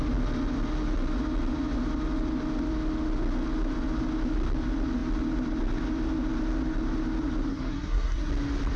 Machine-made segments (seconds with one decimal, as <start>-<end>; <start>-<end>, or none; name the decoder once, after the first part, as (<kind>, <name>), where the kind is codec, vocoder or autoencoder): 7.5-8.3 (codec, SNAC)